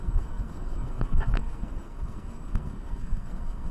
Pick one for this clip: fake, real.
fake